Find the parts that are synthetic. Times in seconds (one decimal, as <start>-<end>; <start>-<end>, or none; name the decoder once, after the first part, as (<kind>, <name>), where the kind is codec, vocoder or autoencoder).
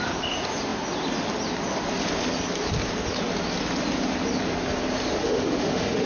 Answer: 5.2-6.1 (autoencoder, DAC-VAE)